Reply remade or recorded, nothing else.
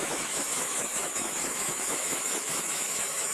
remade